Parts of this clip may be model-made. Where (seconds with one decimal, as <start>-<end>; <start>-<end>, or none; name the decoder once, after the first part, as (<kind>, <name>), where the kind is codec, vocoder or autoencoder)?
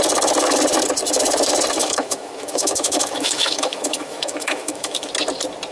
1.8-5.1 (autoencoder, DAC-VAE)